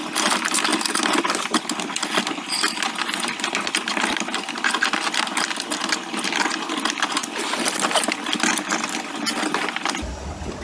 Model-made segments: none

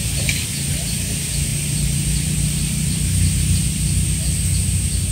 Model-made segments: 1.5-3.6 (vocoder, BigVGAN v2)

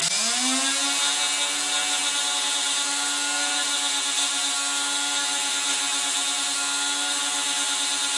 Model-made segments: none

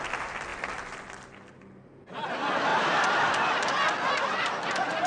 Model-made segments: 2.7-3.7 (vocoder, BigVGAN v2)